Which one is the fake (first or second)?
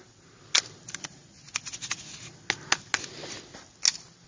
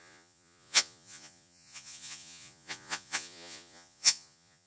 second